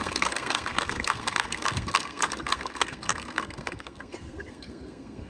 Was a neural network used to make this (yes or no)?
yes